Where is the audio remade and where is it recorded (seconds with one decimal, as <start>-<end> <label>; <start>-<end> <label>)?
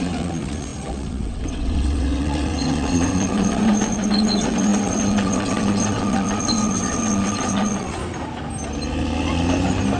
0.0-8.0 remade; 8.0-10.0 recorded